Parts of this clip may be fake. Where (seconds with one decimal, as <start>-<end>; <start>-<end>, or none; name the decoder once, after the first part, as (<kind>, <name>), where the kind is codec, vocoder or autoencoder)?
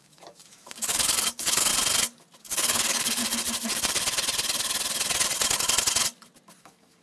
0.0-1.7 (codec, DAC); 2.4-3.2; 6.6-7.0